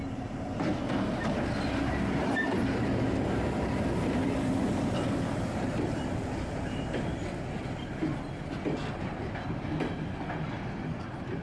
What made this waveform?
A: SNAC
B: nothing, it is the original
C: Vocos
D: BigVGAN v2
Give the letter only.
B